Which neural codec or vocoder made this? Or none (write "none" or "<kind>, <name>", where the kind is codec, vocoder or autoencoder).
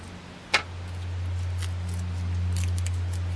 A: none